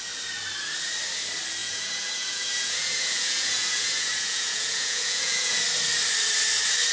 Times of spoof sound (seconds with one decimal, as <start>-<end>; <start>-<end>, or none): 1.6-5.6